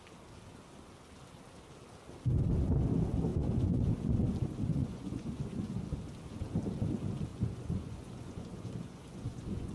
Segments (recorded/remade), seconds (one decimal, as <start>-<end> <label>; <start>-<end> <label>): 0.0-3.3 recorded; 3.3-3.9 remade; 3.9-4.7 recorded; 4.7-5.7 remade; 5.7-7.3 recorded; 7.3-9.7 remade